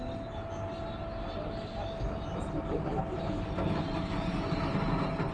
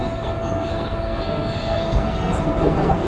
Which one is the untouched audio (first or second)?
first